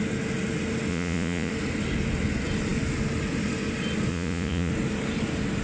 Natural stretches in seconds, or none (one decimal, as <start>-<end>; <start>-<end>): 0.0-0.9; 1.5-4.1; 4.7-5.6